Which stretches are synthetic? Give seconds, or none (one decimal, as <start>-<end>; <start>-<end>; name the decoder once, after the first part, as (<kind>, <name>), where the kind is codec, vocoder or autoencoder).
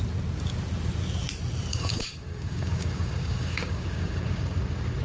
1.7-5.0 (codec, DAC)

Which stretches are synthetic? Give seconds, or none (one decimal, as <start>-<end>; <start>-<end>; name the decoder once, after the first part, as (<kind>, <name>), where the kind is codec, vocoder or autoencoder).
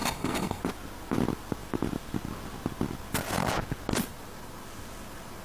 0.0-0.6 (codec, SNAC)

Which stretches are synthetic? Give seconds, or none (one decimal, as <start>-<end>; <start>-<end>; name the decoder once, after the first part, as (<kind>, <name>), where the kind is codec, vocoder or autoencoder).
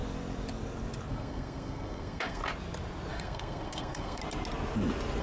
1.1-2.4 (codec, SNAC); 3.1-4.2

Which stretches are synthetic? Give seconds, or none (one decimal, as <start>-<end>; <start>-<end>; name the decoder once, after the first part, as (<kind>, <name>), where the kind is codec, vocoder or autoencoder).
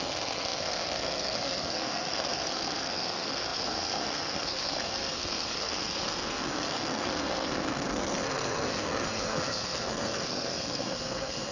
0.0-11.5 (codec, SNAC)